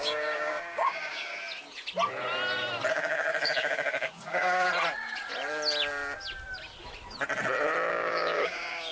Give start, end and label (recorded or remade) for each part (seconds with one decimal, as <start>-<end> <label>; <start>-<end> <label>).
0.0-1.3 remade; 1.3-2.9 recorded; 2.9-4.7 remade; 4.7-7.9 recorded; 7.9-8.9 remade